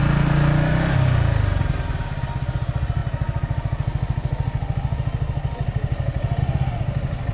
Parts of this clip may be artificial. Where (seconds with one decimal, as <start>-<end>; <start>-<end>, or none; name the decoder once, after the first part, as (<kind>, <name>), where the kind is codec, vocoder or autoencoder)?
none